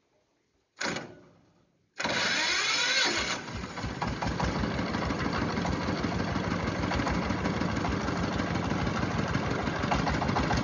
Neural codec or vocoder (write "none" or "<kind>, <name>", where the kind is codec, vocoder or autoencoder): none